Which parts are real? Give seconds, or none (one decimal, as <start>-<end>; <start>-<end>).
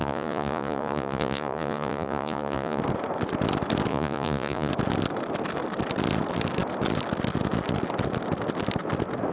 2.8-3.9; 4.7-9.3